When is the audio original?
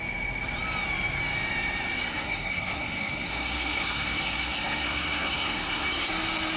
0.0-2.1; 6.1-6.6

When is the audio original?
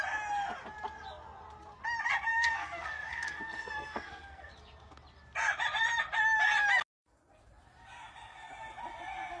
0.0-2.3; 4.5-9.4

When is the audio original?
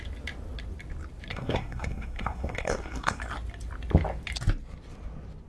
0.0-1.3; 3.2-5.5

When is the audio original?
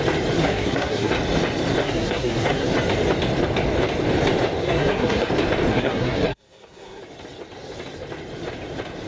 0.0-0.4; 1.1-1.8; 2.7-4.6; 5.3-5.7; 7.0-9.1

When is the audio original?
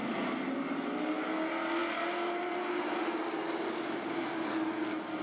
0.0-5.2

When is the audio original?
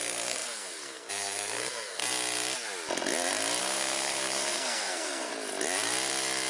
2.0-3.6; 5.3-6.5